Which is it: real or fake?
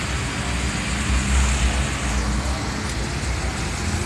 real